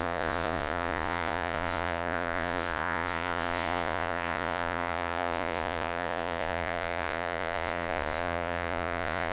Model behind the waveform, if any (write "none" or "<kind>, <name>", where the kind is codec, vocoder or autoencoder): vocoder, Vocos